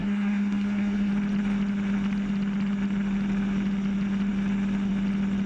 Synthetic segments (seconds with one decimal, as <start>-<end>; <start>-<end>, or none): 0.0-1.1

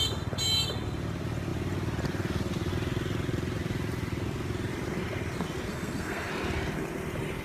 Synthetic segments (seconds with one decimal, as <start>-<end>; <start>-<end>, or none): 5.7-6.3

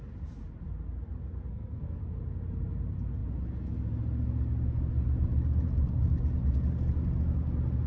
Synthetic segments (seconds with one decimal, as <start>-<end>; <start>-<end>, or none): 1.5-2.0

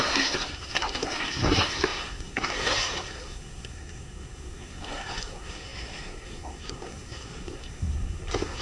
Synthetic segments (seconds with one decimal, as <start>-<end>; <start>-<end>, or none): 0.0-8.6